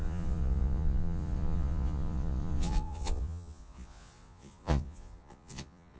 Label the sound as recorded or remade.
remade